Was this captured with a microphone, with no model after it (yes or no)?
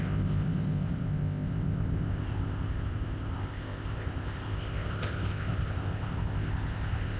no